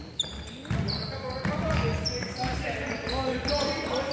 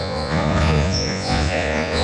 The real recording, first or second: first